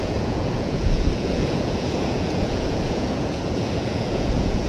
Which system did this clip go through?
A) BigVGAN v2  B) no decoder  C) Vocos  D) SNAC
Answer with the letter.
C